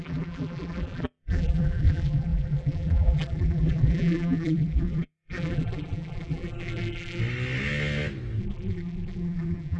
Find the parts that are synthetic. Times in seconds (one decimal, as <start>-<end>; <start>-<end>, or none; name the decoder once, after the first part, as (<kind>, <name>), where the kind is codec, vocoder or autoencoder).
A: 0.0-7.2 (vocoder, BigVGAN v2); 8.4-9.8